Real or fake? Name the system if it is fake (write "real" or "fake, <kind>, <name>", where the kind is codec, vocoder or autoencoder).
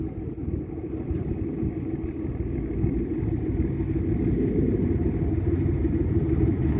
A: real